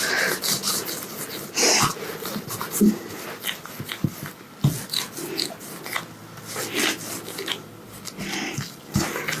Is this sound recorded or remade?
recorded